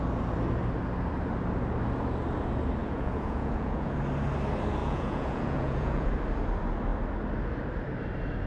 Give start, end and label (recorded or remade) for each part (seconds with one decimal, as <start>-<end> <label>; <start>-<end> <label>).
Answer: 0.0-2.8 recorded; 2.8-4.0 remade; 4.0-4.8 recorded; 4.8-6.1 remade; 6.1-8.5 recorded